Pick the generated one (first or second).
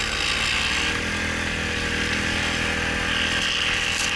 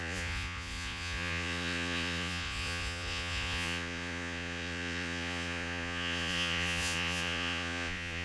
second